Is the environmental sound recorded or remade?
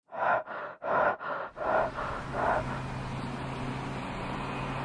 recorded